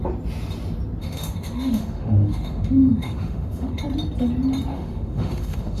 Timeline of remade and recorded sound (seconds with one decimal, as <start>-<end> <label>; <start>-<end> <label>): 0.0-1.0 recorded; 1.0-3.8 remade; 3.8-4.7 recorded; 4.7-5.8 remade